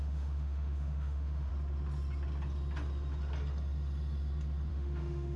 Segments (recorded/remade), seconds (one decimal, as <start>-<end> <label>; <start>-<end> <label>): 0.0-1.5 remade; 1.5-4.7 recorded; 4.7-5.4 remade